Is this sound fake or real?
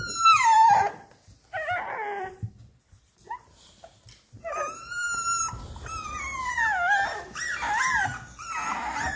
real